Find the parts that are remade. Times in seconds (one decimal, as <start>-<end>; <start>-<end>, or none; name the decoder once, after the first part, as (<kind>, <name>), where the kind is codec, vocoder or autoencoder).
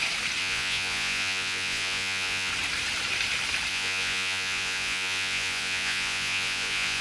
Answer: 0.4-2.5 (vocoder, Vocos); 3.7-7.0